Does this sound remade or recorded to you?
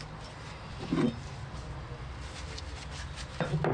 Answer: recorded